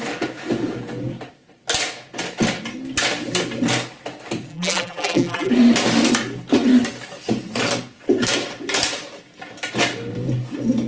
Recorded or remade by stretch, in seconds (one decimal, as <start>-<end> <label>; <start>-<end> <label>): 0.0-4.5 recorded; 4.5-5.5 remade; 5.5-10.9 recorded